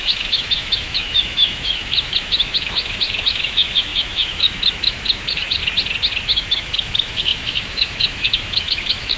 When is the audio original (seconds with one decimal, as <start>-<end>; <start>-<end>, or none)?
5.6-6.2